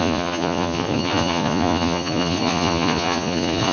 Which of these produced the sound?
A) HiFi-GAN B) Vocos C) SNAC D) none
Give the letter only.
B